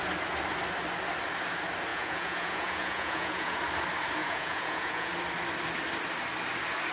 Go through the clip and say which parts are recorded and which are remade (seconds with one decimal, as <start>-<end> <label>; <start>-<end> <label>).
0.0-1.9 recorded; 1.9-3.6 remade; 3.6-4.2 recorded; 4.2-5.1 remade; 5.1-6.9 recorded